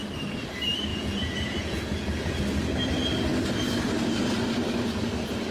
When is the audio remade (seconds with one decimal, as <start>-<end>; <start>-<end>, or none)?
0.9-2.4